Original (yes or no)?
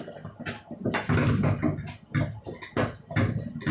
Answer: yes